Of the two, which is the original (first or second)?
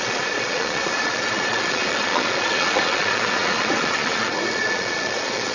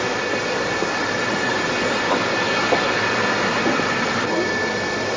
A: second